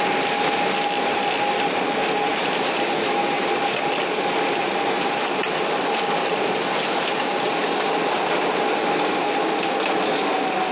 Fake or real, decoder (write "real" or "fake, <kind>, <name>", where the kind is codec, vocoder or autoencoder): real